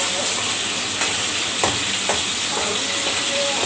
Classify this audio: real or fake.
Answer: real